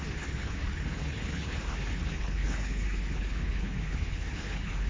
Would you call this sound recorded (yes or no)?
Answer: no